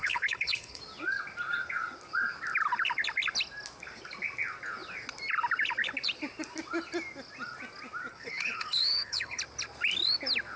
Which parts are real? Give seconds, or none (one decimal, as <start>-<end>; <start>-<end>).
0.8-8.1; 9.4-10.6